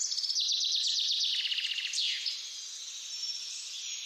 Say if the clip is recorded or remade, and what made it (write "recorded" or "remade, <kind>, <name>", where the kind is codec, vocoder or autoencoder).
recorded